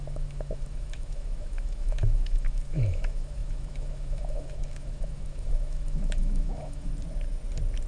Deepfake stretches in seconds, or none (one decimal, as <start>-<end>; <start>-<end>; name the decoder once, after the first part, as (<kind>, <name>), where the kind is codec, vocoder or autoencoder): 0.0-6.9 (autoencoder, DAC-VAE)